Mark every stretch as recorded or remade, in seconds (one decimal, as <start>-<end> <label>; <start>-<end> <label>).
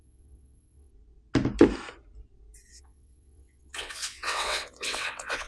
0.0-0.9 remade; 0.9-2.7 recorded; 2.7-5.5 remade